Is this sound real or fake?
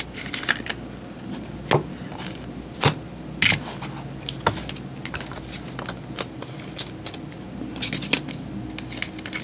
real